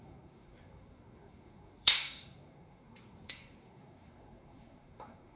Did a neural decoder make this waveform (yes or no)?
yes